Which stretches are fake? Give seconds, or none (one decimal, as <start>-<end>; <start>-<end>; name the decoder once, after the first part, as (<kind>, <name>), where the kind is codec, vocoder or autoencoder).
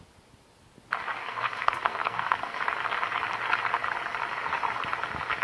1.2-2.6 (codec, SNAC)